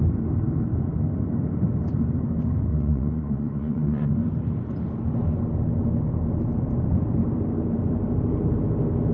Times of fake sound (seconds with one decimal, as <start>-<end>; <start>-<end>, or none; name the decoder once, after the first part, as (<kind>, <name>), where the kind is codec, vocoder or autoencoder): 2.7-4.1 (vocoder, Vocos)